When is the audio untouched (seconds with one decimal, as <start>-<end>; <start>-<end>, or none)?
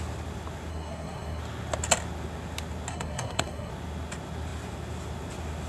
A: 0.0-0.7; 1.4-2.9; 3.7-5.7